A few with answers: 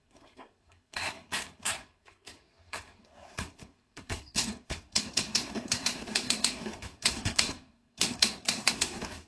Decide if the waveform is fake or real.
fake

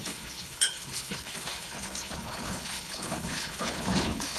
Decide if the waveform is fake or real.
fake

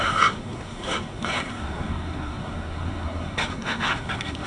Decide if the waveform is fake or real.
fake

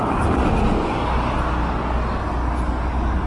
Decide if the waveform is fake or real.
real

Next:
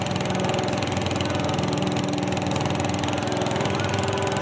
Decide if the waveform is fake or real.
real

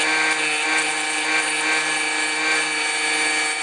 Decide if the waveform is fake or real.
real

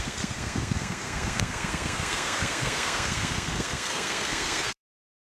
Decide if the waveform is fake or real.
fake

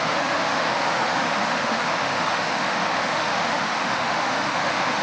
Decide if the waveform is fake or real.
fake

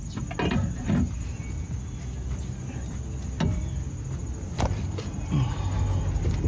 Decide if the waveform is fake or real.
real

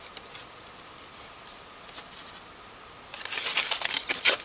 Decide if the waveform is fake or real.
real